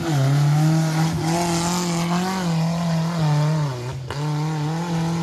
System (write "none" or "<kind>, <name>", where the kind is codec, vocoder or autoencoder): none